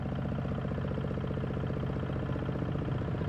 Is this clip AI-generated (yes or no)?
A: no